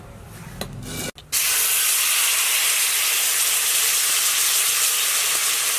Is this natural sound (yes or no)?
yes